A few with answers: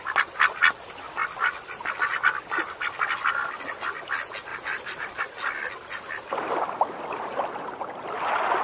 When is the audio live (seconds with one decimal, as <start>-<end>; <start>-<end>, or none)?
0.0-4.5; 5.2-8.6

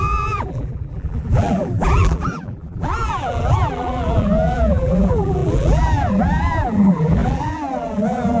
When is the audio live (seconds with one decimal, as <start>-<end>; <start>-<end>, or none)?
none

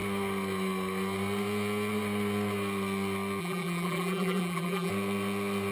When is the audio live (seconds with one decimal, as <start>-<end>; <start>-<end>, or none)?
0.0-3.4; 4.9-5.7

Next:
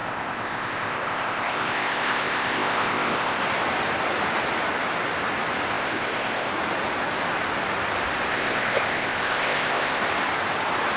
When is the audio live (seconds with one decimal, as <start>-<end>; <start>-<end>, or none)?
3.4-5.7; 6.5-8.3; 10.0-11.0

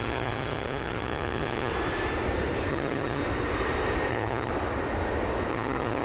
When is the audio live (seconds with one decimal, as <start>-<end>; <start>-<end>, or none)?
1.7-2.7; 3.2-4.1; 4.5-5.5

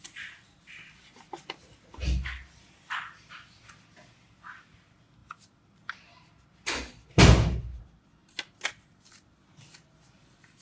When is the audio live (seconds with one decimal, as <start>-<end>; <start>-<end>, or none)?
0.0-10.6